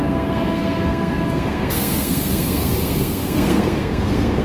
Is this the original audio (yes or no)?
no